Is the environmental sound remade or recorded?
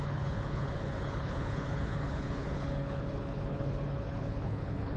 remade